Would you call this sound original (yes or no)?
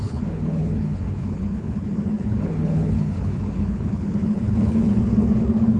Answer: no